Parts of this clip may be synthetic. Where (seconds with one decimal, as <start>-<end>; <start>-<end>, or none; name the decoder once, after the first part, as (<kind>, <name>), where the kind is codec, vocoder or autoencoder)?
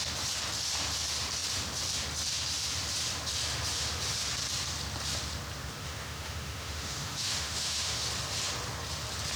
5.8-8.0 (autoencoder, DAC-VAE)